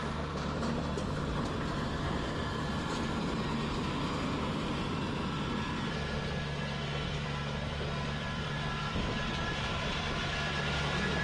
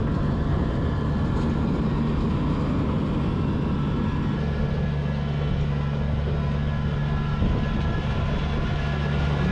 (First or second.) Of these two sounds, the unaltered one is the second